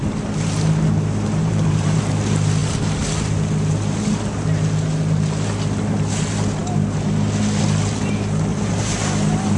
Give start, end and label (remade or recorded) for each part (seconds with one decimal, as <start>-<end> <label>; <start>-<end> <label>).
0.0-1.4 recorded; 1.4-2.0 remade; 2.0-8.5 recorded; 8.5-9.6 remade

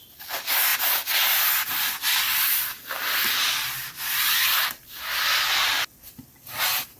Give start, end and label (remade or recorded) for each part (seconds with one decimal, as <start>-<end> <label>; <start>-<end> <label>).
0.0-7.0 recorded

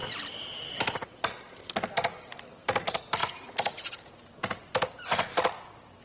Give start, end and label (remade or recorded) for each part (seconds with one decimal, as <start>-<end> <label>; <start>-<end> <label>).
0.0-1.3 remade; 1.3-6.0 recorded

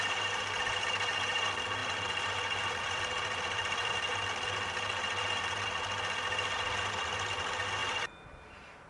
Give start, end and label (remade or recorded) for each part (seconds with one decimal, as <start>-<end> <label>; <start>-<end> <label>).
0.0-1.8 recorded; 1.8-3.9 remade; 3.9-7.8 recorded; 7.8-8.4 remade; 8.4-8.9 recorded

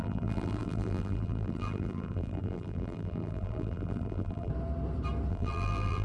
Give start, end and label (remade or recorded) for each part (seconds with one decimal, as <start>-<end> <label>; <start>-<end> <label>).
0.0-4.5 remade; 4.5-5.3 recorded; 5.3-6.0 remade

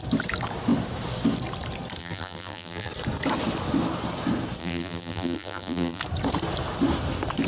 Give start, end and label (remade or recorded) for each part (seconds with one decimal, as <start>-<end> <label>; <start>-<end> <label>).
0.0-2.0 recorded; 2.0-2.9 remade; 2.9-4.6 recorded; 4.6-6.0 remade; 6.0-7.5 recorded